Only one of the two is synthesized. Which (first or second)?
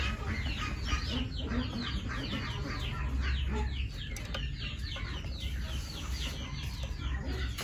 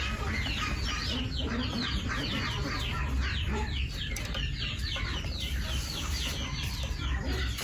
second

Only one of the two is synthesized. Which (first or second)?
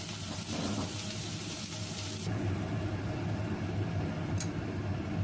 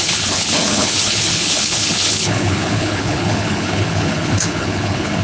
second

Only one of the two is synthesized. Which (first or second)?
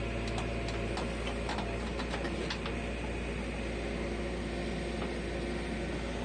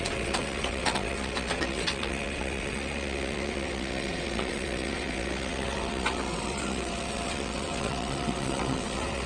second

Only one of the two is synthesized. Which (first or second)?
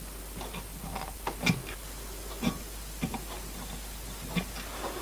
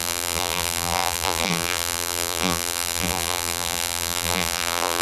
second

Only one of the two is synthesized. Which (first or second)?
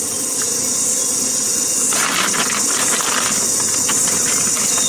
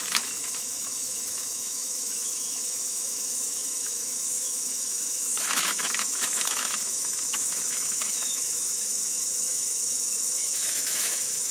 second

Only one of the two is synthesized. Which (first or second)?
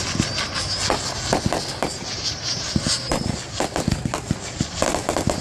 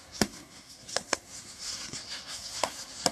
second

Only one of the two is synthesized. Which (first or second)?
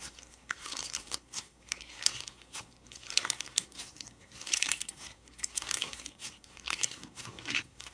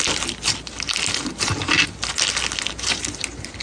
first